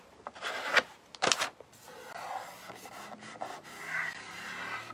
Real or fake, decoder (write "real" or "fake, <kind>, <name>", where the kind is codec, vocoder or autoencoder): real